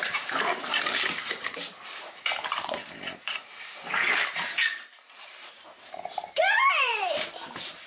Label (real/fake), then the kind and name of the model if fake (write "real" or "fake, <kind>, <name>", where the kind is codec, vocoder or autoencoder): fake, vocoder, BigVGAN v2